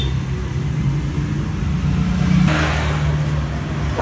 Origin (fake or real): real